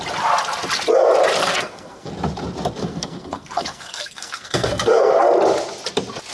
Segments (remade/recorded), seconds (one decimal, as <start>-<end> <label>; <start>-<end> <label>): 0.0-1.4 recorded; 1.4-2.1 remade; 2.1-2.8 recorded; 2.8-5.1 remade; 5.1-6.3 recorded